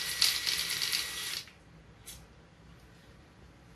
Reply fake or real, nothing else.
real